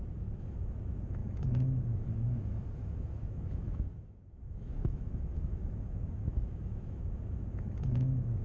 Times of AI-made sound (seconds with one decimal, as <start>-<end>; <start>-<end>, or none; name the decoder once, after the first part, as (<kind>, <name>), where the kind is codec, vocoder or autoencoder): 0.0-8.4 (autoencoder, DAC-VAE)